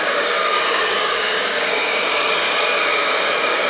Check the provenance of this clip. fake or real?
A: fake